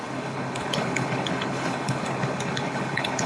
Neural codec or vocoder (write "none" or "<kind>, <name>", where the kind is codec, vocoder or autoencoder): codec, HILCodec